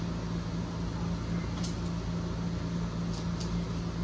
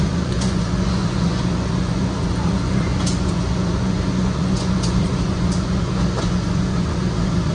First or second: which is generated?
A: second